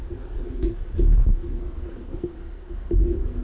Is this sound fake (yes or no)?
yes